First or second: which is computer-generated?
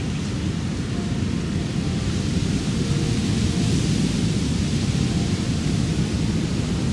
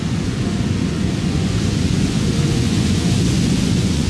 second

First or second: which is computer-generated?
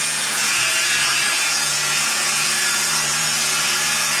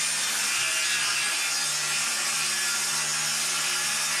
first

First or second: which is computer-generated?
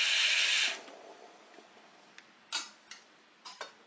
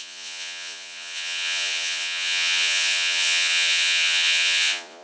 second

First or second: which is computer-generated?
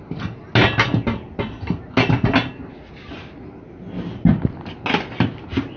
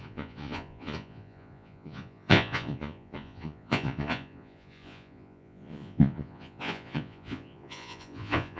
second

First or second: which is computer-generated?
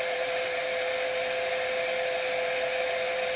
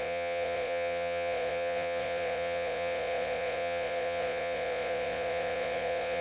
second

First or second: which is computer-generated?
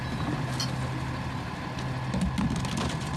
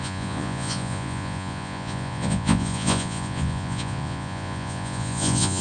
second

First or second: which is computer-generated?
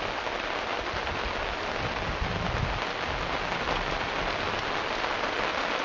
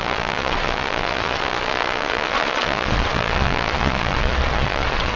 second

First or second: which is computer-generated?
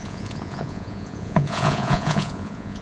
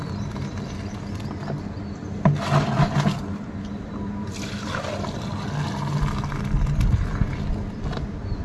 first